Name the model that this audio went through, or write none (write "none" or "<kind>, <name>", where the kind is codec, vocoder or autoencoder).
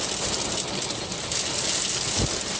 none